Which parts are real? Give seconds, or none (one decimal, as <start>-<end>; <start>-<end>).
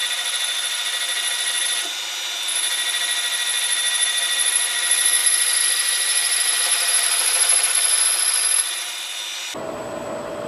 0.0-5.2; 7.7-10.5